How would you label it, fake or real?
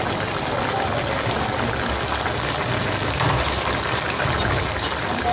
real